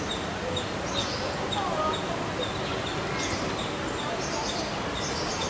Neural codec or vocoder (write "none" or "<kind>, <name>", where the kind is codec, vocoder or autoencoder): none